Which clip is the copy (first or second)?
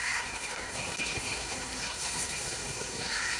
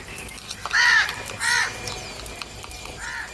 first